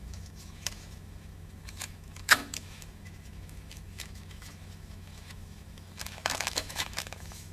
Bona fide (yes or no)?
no